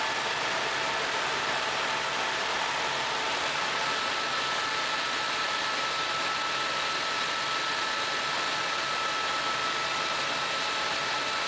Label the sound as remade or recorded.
recorded